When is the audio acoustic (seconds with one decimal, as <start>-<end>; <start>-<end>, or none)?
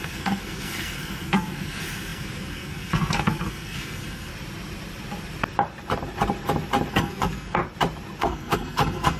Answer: 4.3-6.9; 7.6-8.2